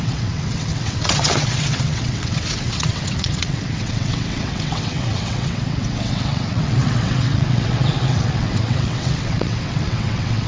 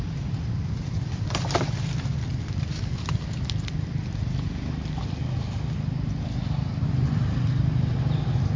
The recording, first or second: second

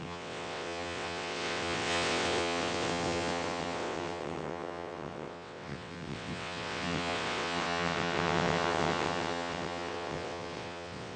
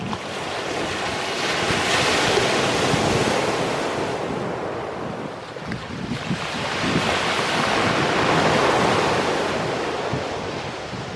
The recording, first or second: second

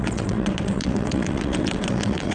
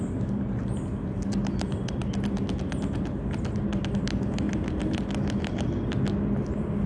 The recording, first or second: second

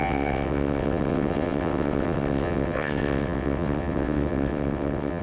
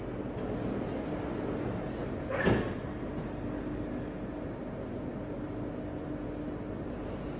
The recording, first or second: second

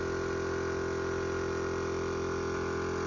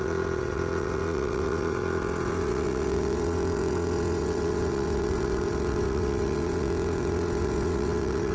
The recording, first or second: first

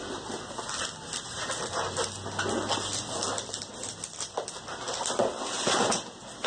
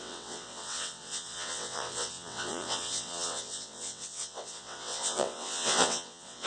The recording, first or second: first